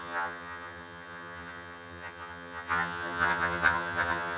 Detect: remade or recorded remade